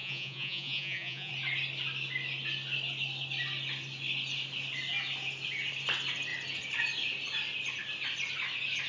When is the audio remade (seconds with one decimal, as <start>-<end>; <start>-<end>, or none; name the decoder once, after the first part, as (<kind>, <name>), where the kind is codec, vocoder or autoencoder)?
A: 0.0-1.3 (vocoder, Vocos)